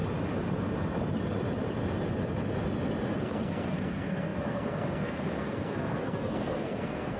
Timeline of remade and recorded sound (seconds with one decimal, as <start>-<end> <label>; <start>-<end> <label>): 0.0-3.2 recorded; 3.2-7.2 remade